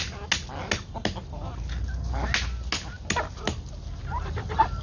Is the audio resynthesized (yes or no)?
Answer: no